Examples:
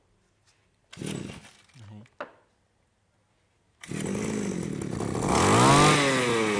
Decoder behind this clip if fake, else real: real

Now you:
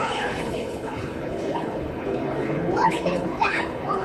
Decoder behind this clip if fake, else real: fake, codec, HILCodec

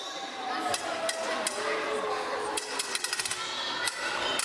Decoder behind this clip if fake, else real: real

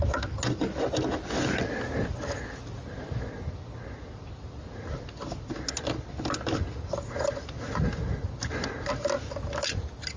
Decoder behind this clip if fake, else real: real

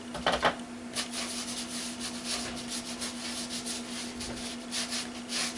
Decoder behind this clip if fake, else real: real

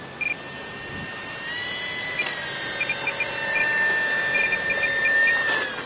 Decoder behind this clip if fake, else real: real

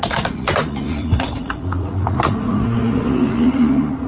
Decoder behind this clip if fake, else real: fake, vocoder, Vocos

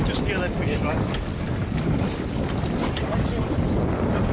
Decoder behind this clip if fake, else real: real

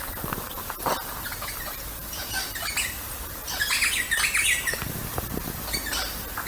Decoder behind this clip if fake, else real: real